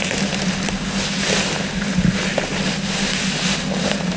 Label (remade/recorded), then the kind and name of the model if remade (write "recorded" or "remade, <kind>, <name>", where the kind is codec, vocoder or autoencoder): recorded